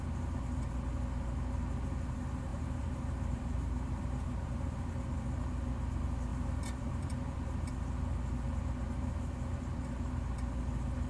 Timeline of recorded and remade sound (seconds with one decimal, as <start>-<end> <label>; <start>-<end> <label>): 0.0-2.5 recorded; 2.5-4.9 remade; 4.9-6.3 recorded; 6.3-7.7 remade; 7.7-11.1 recorded